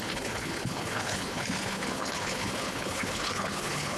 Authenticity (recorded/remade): remade